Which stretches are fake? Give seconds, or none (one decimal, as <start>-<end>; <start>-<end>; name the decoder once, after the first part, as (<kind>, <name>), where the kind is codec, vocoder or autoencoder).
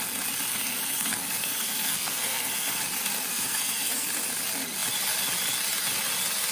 0.5-2.8 (codec, SNAC); 3.3-4.1